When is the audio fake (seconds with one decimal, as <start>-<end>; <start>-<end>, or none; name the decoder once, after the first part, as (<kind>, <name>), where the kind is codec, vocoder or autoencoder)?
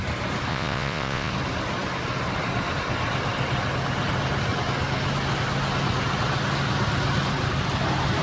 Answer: 0.5-1.3 (vocoder, Vocos)